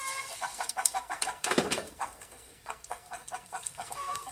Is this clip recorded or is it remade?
remade